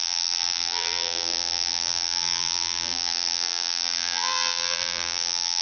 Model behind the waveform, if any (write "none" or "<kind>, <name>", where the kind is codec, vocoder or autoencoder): vocoder, BigVGAN v2